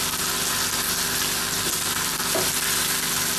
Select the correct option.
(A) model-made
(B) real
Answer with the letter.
B